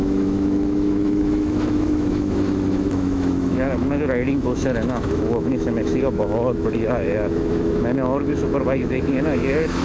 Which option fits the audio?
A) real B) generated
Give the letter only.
B